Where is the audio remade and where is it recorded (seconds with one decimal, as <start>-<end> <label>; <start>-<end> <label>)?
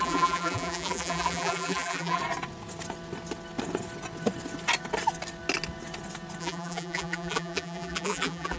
0.0-2.2 remade; 2.2-6.4 recorded; 6.4-8.6 remade